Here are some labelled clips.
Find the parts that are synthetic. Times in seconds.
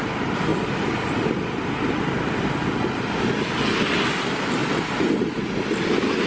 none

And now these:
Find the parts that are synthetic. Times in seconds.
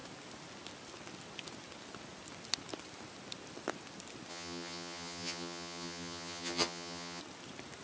4.3-7.2 (vocoder, HiFi-GAN)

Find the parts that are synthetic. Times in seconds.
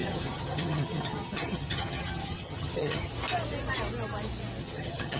0.0-3.1 (vocoder, HiFi-GAN); 4.6-5.2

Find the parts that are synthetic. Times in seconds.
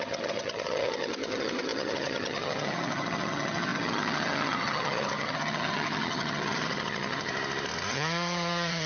0.0-7.3 (vocoder, HiFi-GAN); 7.9-8.9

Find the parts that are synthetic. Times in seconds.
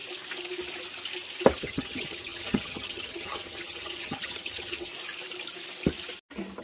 1.6-4.9 (vocoder, HiFi-GAN)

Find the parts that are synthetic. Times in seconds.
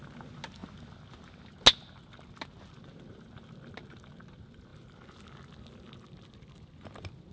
none